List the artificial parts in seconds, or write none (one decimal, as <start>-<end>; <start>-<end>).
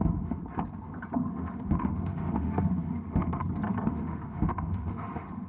0.0-0.4; 1.3-3.4; 3.9-5.5